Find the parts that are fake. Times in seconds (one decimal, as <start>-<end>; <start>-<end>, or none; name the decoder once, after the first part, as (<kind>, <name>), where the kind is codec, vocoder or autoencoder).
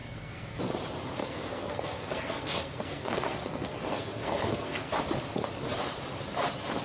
0.0-0.6 (codec, SNAC); 1.2-4.9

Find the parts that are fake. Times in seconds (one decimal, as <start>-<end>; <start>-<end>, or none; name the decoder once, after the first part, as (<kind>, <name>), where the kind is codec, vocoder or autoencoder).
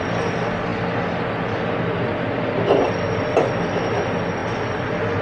none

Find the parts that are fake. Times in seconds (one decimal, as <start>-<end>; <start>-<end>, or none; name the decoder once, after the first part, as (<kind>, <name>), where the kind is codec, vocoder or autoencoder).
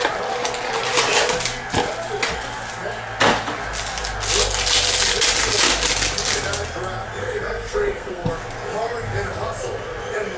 7.2-8.3 (codec, SNAC)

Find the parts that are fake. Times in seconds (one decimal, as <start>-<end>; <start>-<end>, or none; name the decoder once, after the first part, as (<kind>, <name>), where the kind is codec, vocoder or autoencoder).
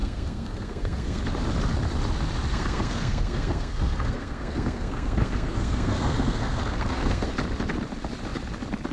0.0-1.2 (codec, SNAC); 2.5-7.3